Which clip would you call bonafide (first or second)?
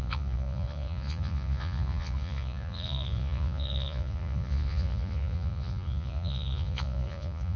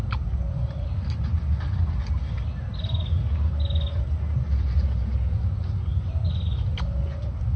second